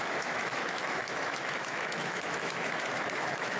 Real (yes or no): no